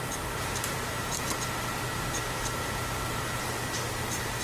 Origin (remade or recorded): remade